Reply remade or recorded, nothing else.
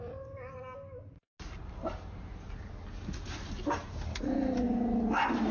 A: recorded